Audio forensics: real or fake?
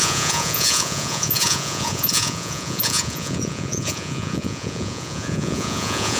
fake